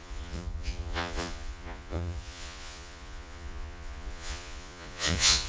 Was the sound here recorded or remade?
remade